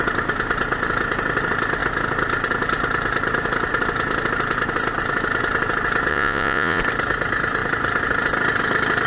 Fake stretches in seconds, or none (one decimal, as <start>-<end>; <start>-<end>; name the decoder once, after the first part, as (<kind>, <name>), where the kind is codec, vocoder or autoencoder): 6.1-6.8 (vocoder, Vocos)